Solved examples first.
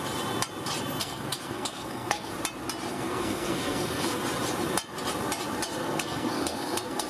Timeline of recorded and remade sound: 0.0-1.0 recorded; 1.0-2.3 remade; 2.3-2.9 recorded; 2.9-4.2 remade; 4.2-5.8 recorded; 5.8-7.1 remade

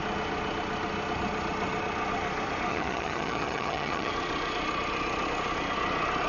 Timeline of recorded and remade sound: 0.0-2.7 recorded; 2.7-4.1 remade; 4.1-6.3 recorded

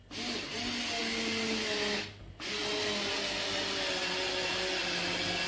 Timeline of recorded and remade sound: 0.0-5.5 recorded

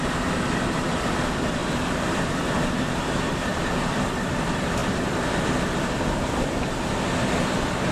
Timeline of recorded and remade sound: 0.0-7.9 remade